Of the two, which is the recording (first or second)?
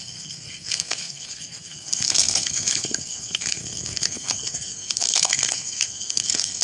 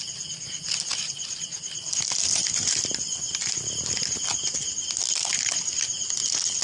second